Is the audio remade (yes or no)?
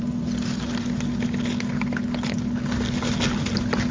no